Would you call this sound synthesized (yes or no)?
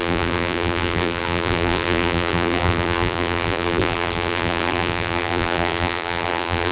yes